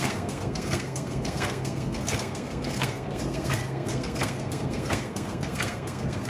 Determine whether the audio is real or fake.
fake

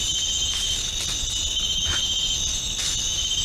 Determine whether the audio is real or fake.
real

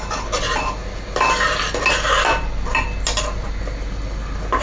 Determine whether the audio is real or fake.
real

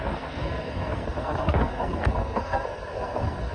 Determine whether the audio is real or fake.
fake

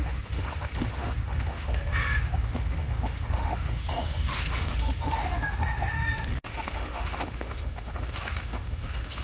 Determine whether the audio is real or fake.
fake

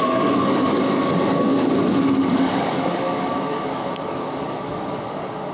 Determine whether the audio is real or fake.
fake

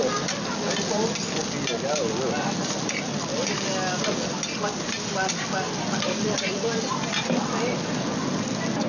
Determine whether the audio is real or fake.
real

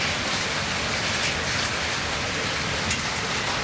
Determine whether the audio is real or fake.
real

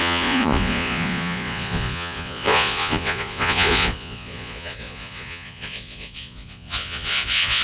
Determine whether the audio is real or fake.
fake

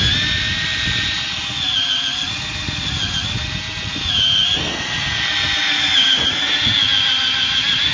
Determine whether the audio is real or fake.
real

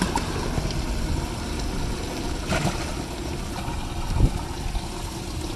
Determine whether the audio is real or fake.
real